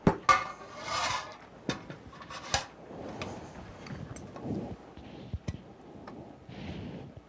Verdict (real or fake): real